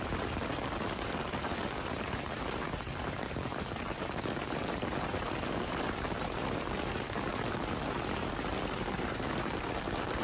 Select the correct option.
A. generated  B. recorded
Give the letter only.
A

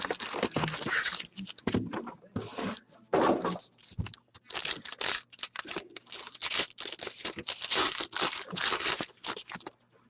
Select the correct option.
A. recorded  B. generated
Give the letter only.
A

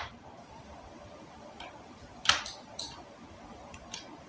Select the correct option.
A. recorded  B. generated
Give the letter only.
B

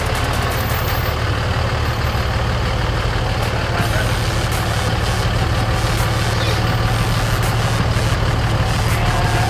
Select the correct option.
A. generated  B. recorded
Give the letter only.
B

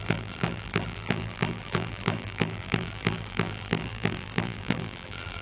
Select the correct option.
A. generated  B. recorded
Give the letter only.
A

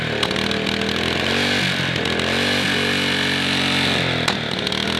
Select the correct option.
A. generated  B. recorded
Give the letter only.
B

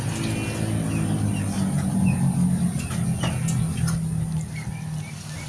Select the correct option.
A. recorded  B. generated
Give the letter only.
A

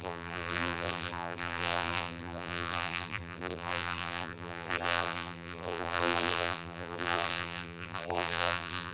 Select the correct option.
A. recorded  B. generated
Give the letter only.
B